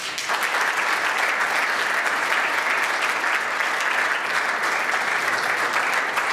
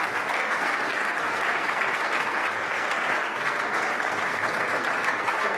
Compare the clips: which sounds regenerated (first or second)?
second